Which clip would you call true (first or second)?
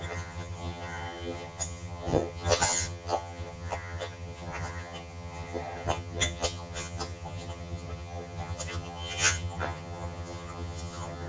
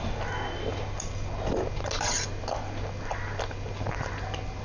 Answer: second